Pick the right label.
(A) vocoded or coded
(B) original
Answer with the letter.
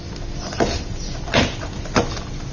B